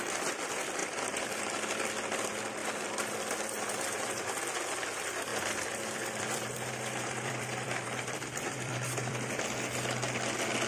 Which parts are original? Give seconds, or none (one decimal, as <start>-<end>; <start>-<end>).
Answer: 0.0-0.8; 1.4-5.3; 9.3-10.7